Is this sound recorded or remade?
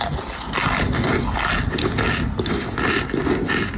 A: recorded